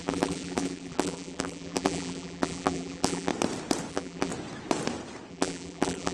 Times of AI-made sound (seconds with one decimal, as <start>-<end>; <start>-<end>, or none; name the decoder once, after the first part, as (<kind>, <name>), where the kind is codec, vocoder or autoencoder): 0.0-3.3 (vocoder, BigVGAN v2); 3.9-4.3; 5.3-6.1